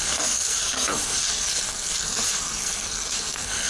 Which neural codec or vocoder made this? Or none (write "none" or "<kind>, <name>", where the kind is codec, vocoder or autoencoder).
codec, SNAC